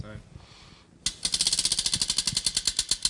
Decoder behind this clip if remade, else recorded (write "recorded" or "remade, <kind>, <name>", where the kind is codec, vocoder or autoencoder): recorded